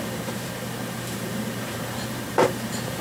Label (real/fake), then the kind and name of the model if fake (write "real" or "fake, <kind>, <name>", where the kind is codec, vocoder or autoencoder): fake, vocoder, BigVGAN v2